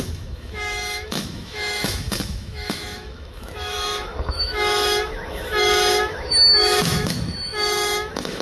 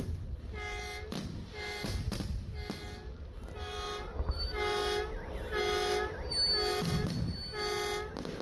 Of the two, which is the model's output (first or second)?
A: first